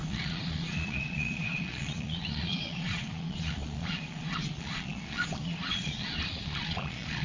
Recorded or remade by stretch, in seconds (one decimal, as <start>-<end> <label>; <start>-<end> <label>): 0.0-7.2 remade